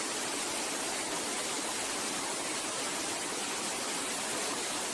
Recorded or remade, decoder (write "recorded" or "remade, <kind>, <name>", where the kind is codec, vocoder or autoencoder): recorded